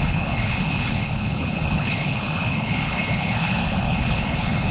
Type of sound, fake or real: fake